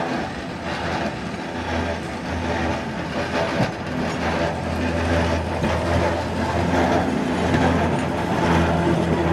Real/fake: real